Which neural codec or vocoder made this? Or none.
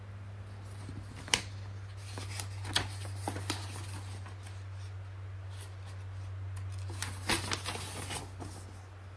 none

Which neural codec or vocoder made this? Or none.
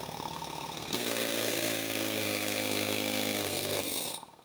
codec, SNAC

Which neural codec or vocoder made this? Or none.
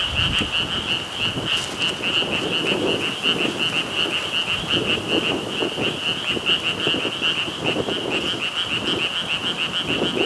none